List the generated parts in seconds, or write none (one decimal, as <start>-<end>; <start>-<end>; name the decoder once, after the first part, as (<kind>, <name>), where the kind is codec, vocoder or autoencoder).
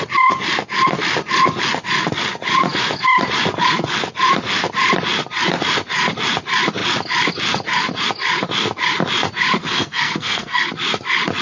9.6-10.7 (codec, SNAC)